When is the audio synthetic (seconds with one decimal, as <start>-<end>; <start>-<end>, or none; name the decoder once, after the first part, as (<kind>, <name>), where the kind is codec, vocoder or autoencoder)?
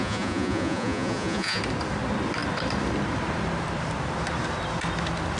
0.0-1.6 (vocoder, Vocos)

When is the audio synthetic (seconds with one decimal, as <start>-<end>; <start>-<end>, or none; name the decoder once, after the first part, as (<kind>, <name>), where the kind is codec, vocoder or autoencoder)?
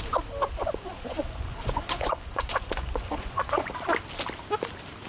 0.6-3.7 (vocoder, Vocos)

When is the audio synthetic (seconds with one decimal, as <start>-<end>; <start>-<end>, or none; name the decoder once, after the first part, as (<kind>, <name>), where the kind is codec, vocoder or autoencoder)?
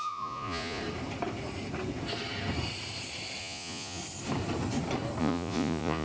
0.0-0.8 (vocoder, Vocos); 3.4-4.0; 5.2-6.0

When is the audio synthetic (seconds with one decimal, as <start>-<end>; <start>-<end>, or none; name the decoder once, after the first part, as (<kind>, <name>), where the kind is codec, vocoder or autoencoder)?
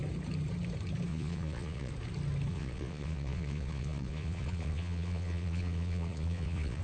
1.1-1.9 (vocoder, Vocos); 2.5-6.8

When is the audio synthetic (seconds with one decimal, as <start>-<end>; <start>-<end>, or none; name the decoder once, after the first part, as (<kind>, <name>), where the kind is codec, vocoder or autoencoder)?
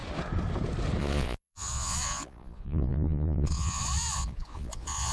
1.0-5.1 (vocoder, Vocos)